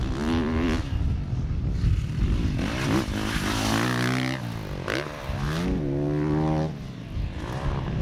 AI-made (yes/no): no